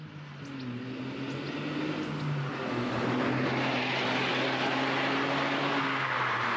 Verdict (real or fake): real